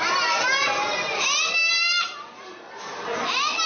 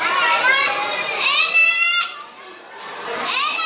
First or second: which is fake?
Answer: second